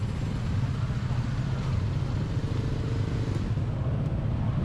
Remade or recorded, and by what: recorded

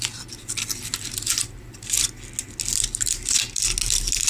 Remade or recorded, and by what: recorded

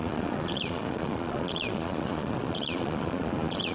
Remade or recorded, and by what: remade, vocoder, Vocos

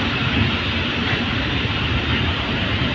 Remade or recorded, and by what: recorded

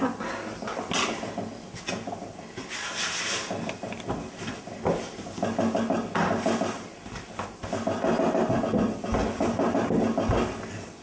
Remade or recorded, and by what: recorded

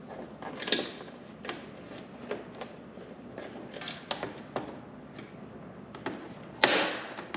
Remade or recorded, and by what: recorded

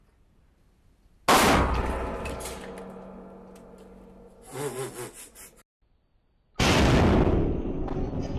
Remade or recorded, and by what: recorded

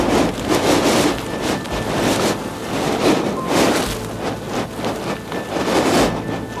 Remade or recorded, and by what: recorded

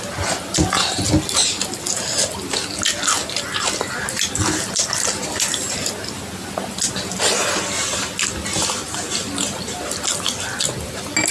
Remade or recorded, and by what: recorded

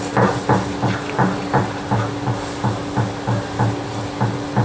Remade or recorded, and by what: recorded